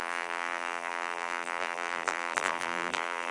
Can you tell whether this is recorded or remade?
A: remade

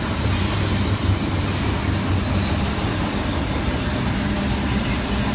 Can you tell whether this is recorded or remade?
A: recorded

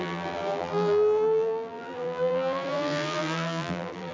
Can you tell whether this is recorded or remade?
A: remade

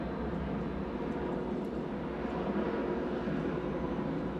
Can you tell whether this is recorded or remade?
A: recorded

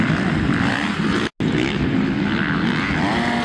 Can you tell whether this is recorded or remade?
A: recorded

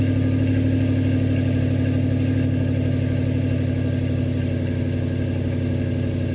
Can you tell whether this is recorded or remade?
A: recorded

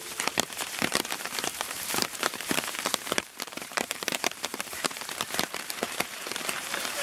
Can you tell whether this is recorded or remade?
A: remade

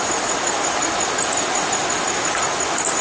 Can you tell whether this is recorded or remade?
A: recorded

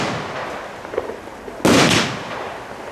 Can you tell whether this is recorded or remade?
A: recorded